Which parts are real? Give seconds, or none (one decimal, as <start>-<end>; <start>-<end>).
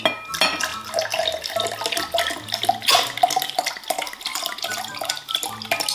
0.0-4.3; 5.1-5.9